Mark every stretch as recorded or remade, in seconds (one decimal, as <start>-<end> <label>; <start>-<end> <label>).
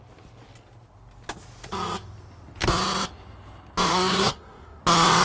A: 0.0-3.9 recorded; 3.9-4.8 remade; 4.8-5.2 recorded